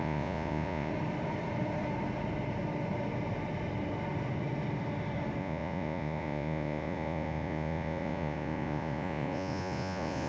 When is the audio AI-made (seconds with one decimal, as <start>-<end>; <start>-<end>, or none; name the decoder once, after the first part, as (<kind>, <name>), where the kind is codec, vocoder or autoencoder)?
0.0-0.9 (vocoder, Vocos); 5.4-10.3